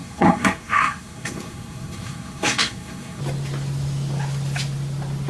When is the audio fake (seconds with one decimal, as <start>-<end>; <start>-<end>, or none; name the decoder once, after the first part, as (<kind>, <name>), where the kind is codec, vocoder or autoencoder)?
0.0-3.2 (codec, SNAC)